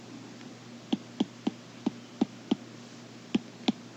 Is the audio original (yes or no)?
yes